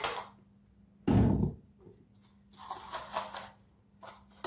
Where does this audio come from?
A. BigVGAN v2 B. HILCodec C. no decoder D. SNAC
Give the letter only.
C